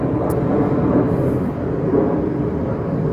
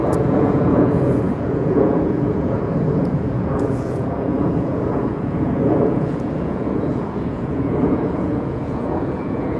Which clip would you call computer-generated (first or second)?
second